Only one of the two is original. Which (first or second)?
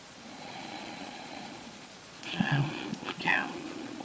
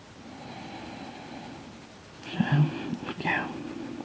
second